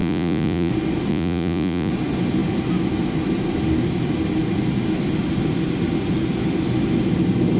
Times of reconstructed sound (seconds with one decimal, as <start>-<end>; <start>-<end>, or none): 0.0-0.7; 1.1-1.9